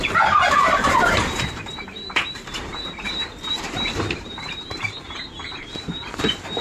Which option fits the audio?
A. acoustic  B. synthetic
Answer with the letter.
B